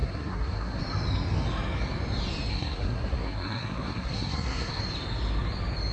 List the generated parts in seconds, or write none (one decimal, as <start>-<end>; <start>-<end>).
0.0-0.8; 2.5-4.8